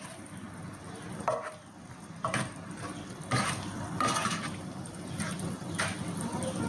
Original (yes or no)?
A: yes